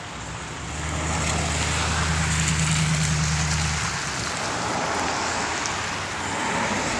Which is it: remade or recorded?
recorded